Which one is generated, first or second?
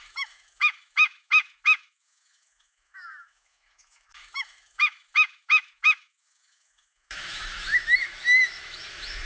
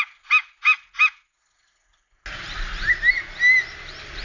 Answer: first